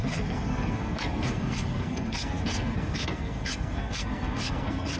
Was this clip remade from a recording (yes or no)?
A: yes